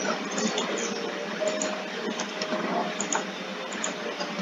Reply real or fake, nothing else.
real